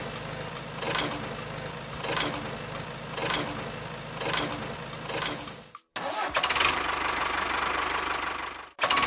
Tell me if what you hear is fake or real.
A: real